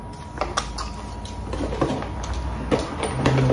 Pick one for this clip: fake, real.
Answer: real